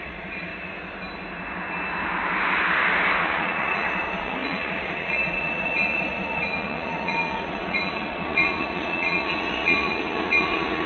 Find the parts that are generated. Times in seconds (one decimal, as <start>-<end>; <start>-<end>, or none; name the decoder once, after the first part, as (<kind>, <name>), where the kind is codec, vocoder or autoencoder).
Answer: 0.0-0.5 (vocoder, Vocos); 3.2-10.9